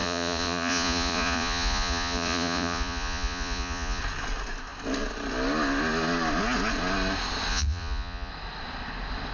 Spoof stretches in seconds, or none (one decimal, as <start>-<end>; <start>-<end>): 0.0-4.0; 7.5-8.3